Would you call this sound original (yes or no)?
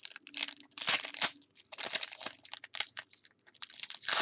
yes